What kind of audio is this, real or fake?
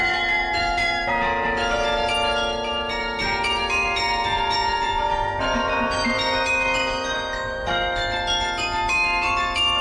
fake